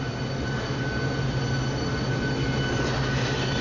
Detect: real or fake real